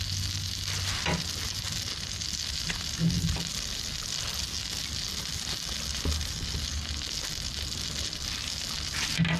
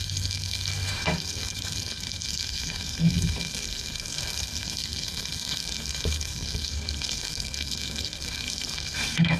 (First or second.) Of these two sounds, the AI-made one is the second